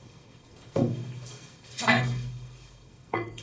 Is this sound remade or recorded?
remade